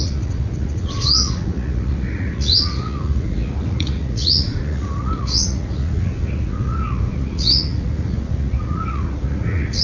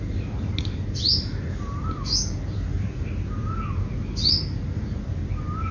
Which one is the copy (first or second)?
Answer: first